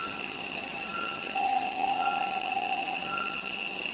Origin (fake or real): fake